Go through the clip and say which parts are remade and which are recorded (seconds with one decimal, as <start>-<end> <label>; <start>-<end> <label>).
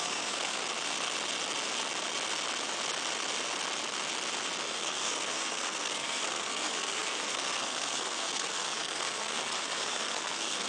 0.0-0.6 remade; 0.6-4.6 recorded; 4.6-10.7 remade